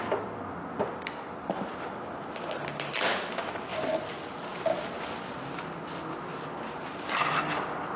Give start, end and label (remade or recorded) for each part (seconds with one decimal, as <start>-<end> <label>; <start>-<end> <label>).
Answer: 0.0-8.0 recorded